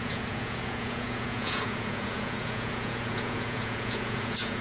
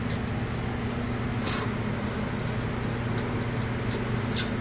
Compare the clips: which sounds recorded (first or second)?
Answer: second